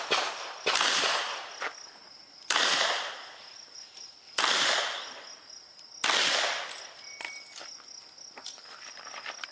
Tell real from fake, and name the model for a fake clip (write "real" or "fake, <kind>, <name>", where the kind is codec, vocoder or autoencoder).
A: real